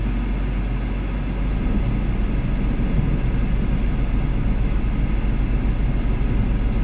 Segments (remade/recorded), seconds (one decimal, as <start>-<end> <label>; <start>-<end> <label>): 0.0-4.3 recorded; 4.3-4.8 remade; 4.8-6.8 recorded